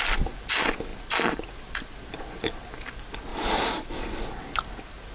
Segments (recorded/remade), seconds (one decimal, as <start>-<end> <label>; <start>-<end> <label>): 0.0-0.9 recorded; 0.9-1.5 remade; 1.5-3.3 recorded; 3.3-4.2 remade; 4.2-5.1 recorded